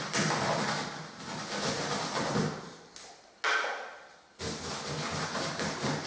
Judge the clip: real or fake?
real